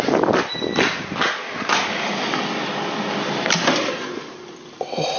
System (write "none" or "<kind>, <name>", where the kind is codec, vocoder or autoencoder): none